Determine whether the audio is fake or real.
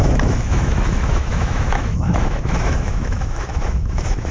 fake